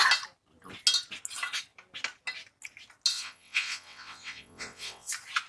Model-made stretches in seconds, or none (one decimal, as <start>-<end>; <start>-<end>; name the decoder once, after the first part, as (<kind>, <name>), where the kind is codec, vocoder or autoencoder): 3.1-5.1 (vocoder, WaveNeXt)